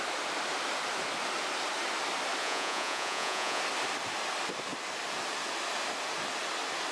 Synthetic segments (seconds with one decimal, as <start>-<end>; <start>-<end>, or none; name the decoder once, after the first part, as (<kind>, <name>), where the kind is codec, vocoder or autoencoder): 2.4-3.6 (vocoder, Vocos)